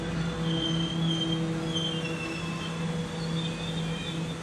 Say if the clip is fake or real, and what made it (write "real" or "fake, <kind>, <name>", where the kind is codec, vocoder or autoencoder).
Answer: real